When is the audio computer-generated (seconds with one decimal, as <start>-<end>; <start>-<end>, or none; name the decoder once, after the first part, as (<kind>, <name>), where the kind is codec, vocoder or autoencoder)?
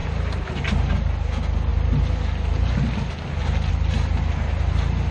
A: 0.0-0.5 (vocoder, BigVGAN v2)